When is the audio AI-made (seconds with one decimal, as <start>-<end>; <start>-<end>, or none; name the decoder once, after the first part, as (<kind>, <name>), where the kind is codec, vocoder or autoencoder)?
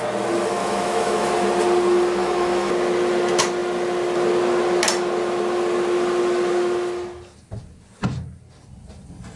0.6-1.3 (autoencoder, DAC-VAE); 2.2-2.7